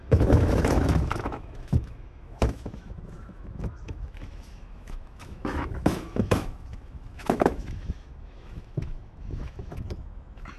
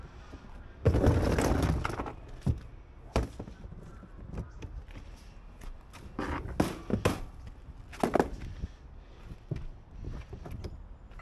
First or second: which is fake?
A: first